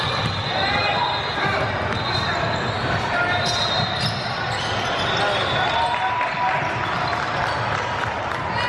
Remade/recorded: recorded